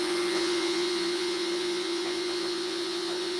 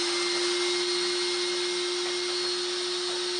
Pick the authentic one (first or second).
second